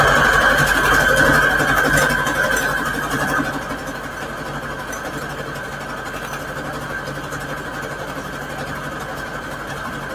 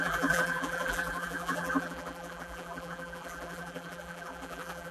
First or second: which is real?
first